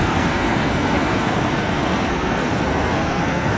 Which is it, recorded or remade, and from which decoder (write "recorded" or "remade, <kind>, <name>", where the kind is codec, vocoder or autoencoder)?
remade, codec, SNAC